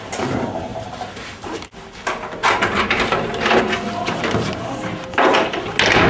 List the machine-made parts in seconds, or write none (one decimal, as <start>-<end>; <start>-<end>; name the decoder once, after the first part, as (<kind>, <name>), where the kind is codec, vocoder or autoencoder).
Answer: 0.7-1.5 (vocoder, BigVGAN v2); 2.4-3.6